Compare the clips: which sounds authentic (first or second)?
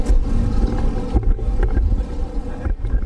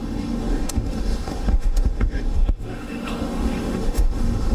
first